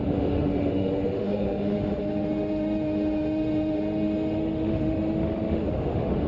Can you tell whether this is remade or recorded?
remade